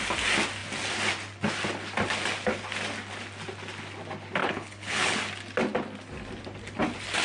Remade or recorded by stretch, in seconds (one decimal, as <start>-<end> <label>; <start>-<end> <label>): 0.0-4.4 recorded; 4.4-5.2 remade; 5.2-7.2 recorded